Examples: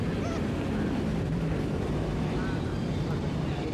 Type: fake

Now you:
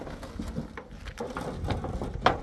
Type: real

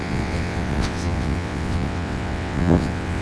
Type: fake